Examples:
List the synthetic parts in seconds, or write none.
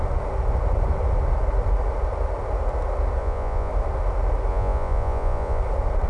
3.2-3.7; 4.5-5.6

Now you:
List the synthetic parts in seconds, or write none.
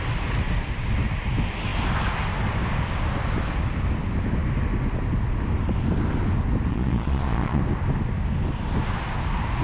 6.7-7.6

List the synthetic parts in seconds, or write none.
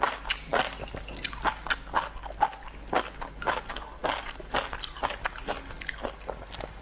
none